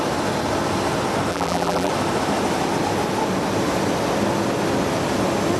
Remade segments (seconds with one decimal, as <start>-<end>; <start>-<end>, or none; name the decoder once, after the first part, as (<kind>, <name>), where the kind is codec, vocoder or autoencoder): 1.3-1.9 (vocoder, BigVGAN v2)